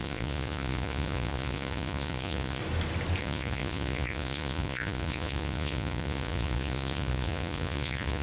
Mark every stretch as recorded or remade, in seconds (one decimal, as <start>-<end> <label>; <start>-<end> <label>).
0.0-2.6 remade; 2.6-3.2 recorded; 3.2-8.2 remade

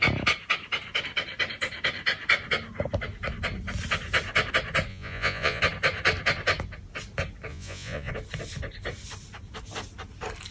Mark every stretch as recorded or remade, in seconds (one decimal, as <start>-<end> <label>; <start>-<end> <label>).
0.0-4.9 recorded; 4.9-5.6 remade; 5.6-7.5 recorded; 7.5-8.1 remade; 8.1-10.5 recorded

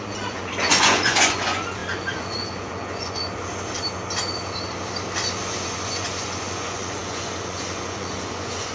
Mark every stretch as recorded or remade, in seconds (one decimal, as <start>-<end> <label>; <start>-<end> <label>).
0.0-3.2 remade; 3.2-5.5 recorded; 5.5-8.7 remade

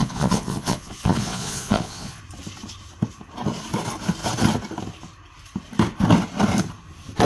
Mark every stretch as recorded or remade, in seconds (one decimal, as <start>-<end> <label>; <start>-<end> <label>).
0.0-2.2 remade; 2.2-7.3 recorded

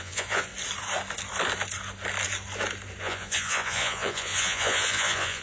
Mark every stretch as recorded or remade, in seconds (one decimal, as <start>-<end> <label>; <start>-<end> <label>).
0.0-0.5 remade; 0.5-3.0 recorded; 3.0-5.4 remade

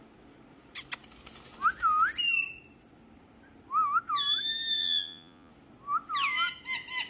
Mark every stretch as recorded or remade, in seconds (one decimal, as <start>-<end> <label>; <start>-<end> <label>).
0.0-4.8 recorded; 4.8-5.5 remade; 5.5-7.1 recorded

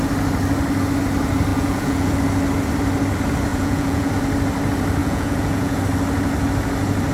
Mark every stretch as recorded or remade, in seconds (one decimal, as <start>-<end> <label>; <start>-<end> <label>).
0.0-1.5 recorded; 1.5-2.1 remade; 2.1-3.5 recorded; 3.5-4.1 remade; 4.1-5.0 recorded; 5.0-5.8 remade; 5.8-7.1 recorded

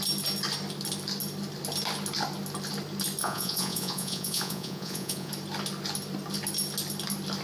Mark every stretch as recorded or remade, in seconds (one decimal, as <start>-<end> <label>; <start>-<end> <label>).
0.0-3.2 recorded; 3.2-5.3 remade; 5.3-7.4 recorded